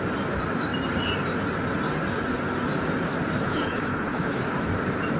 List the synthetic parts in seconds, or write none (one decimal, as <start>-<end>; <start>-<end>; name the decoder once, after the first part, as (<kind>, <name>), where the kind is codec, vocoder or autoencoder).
3.4-4.4 (autoencoder, DAC-VAE)